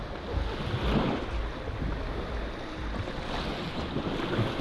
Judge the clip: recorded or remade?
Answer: recorded